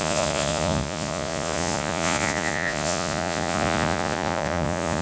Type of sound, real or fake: fake